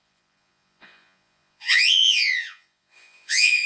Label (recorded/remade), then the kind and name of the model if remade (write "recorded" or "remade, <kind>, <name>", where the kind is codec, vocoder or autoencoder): remade, vocoder, Vocos